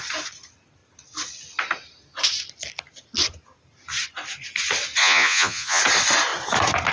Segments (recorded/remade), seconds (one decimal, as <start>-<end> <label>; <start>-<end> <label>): 0.0-5.0 recorded; 5.0-5.8 remade; 5.8-6.9 recorded